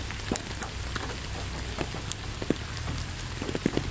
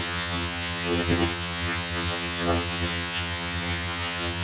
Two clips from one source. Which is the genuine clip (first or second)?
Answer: first